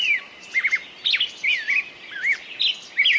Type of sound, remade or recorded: recorded